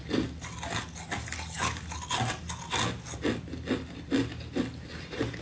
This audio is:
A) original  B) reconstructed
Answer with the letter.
A